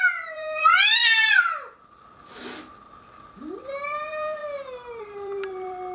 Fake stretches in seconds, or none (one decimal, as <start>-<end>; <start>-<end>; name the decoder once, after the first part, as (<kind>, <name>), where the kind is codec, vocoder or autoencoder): 0.0-4.4 (vocoder, BigVGAN v2); 5.0-5.9

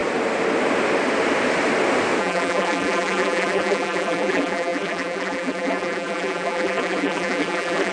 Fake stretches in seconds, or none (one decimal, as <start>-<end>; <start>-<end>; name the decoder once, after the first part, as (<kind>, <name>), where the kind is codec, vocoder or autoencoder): 2.2-7.9 (vocoder, BigVGAN v2)

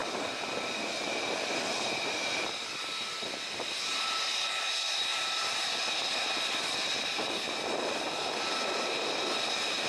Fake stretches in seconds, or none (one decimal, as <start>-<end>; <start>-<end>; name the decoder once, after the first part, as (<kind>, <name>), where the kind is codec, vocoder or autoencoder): 5.1-5.7 (vocoder, BigVGAN v2)

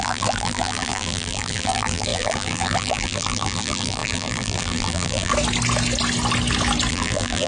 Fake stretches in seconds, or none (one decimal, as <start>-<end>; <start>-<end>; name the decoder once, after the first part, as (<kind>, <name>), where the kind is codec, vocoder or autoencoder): 0.0-5.3 (vocoder, BigVGAN v2); 6.9-7.5